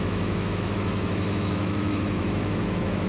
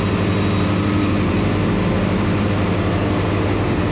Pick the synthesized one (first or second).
first